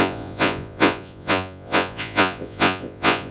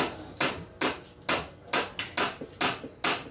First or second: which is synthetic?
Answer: first